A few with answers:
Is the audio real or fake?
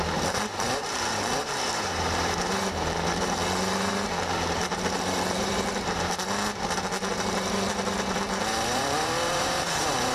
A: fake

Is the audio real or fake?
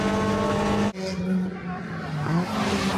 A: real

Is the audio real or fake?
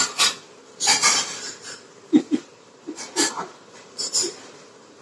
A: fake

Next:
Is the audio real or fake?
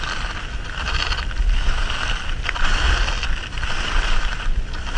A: real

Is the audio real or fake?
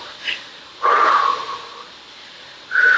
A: fake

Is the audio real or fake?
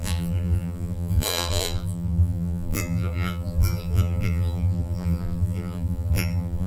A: fake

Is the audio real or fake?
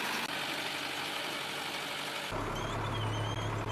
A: real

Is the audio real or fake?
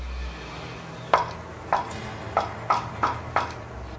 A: real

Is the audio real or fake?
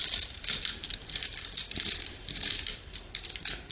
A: fake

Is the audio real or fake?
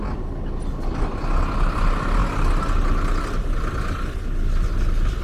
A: real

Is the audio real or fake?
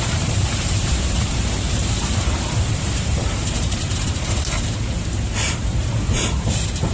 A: fake